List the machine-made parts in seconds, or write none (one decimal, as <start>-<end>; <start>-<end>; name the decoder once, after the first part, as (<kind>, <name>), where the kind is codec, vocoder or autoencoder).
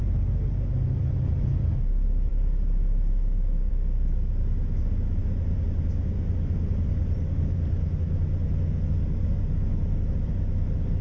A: none